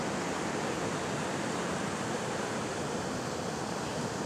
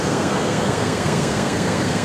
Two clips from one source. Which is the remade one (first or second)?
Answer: second